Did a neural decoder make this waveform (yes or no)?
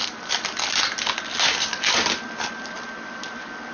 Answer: no